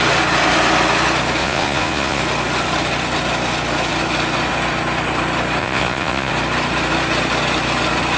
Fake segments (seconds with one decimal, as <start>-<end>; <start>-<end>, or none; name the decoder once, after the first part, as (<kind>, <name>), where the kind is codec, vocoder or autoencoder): 1.4-2.2 (vocoder, Vocos); 5.6-6.3